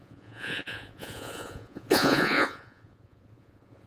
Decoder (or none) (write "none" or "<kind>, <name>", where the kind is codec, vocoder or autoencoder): vocoder, Vocos